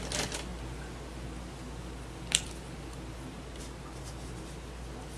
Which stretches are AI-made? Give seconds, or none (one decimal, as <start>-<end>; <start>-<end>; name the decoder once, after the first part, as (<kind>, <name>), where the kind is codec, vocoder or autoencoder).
none